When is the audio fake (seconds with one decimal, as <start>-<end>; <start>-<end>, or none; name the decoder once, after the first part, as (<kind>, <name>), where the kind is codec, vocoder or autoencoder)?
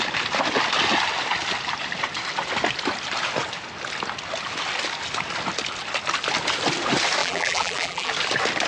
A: 7.2-8.1 (vocoder, BigVGAN v2)